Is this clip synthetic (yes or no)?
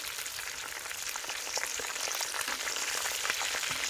yes